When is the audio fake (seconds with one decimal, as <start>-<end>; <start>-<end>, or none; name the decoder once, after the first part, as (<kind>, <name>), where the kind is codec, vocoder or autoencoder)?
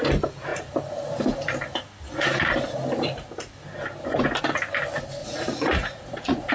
5.2-6.5 (vocoder, Vocos)